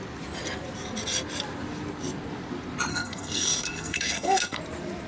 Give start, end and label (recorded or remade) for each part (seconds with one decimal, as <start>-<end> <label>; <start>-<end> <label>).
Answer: 0.0-2.9 recorded; 2.9-4.6 remade; 4.6-5.1 recorded